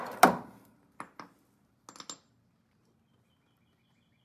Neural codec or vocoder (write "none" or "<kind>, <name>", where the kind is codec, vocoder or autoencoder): none